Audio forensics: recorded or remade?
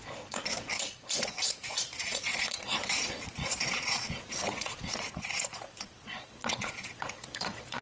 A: remade